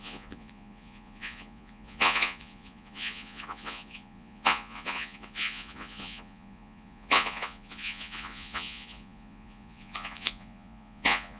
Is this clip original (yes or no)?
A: no